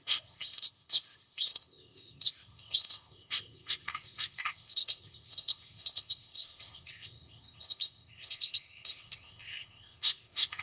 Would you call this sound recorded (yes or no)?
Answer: no